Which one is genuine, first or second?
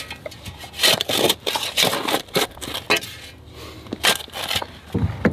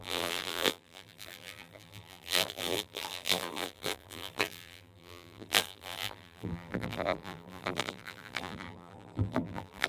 first